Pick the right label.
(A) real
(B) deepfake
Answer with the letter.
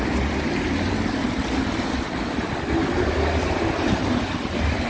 A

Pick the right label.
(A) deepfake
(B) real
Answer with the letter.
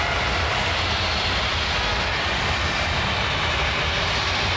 B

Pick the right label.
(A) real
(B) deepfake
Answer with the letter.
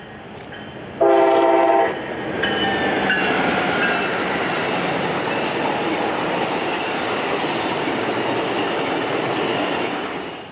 A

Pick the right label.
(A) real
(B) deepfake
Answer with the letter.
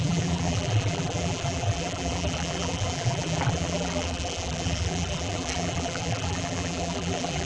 B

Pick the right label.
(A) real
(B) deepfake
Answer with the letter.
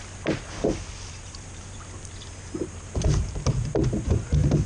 A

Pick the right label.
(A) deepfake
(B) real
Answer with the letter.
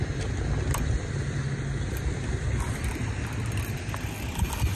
B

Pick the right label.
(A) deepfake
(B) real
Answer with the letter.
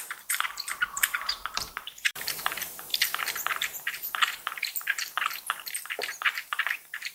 A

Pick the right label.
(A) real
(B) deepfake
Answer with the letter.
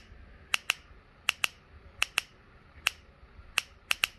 A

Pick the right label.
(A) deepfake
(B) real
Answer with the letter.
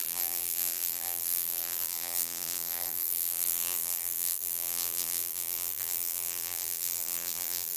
A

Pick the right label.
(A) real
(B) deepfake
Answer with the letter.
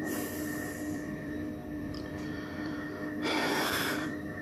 B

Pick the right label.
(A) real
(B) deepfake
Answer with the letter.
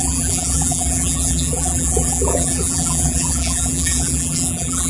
B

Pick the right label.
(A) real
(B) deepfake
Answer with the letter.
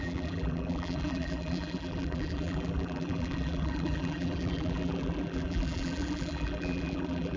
B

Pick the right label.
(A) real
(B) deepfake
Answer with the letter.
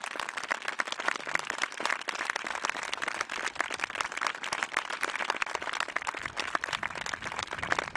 A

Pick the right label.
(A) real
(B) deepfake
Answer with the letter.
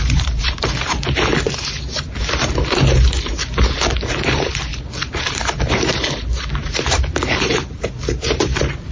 B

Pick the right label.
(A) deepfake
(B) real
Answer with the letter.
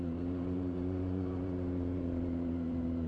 A